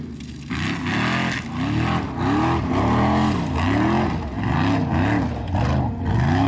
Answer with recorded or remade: recorded